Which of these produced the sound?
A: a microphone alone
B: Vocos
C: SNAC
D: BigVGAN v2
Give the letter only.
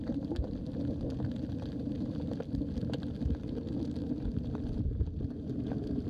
A